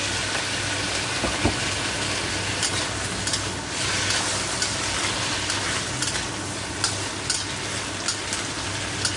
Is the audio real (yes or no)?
yes